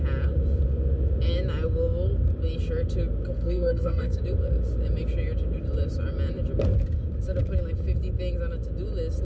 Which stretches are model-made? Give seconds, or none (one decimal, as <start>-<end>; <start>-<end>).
3.3-4.2

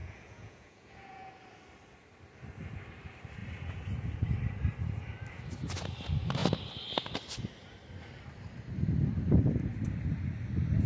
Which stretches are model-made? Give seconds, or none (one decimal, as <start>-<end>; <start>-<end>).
0.0-1.3

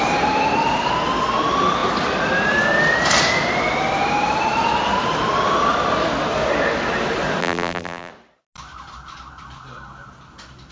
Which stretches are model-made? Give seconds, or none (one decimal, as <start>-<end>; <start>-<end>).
7.4-8.1

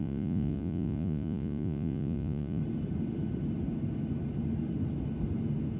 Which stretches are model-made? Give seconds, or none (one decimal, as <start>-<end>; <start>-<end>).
0.0-2.6

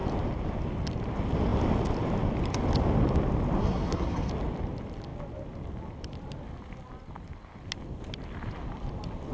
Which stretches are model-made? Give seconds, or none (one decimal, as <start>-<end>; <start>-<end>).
3.6-4.3

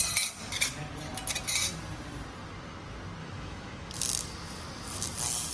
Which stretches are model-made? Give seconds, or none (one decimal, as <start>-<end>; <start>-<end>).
3.2-3.9

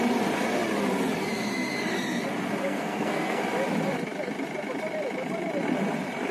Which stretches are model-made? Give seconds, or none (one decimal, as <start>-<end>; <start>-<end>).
2.6-3.4

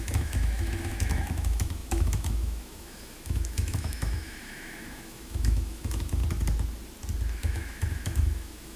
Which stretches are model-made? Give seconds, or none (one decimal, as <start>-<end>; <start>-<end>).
0.0-6.2; 7.4-8.8